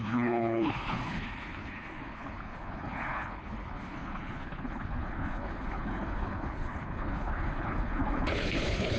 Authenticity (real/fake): fake